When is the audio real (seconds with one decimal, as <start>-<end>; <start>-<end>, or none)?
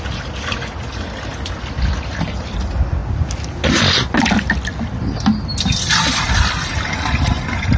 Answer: 0.0-1.3; 2.5-5.5; 7.3-7.8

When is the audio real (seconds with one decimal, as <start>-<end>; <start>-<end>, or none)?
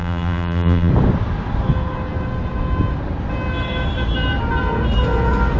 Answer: 0.9-5.6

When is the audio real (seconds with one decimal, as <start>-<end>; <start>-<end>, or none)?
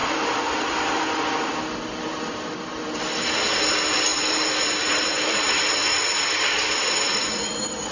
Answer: 1.0-2.1; 3.0-4.1; 5.6-7.9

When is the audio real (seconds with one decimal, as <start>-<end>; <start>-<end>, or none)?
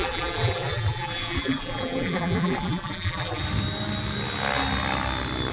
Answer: 3.4-5.5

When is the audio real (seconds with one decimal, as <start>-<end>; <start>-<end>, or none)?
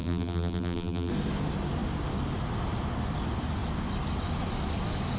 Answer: 1.1-5.2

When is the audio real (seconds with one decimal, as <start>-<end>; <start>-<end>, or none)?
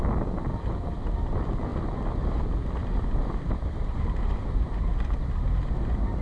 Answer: 0.0-6.2